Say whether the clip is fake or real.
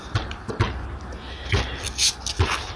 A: real